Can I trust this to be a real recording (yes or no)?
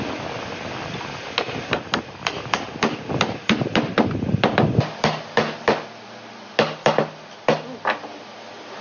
yes